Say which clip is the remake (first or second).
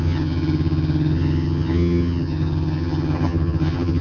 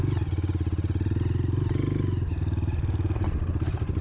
first